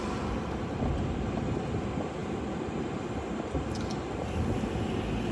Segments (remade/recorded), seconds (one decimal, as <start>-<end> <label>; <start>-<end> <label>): 0.0-2.2 recorded; 2.2-3.1 remade; 3.1-5.3 recorded